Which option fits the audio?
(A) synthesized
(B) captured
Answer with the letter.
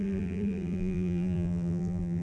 A